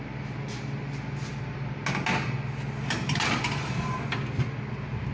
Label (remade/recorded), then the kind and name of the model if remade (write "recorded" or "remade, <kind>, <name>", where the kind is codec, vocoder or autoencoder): recorded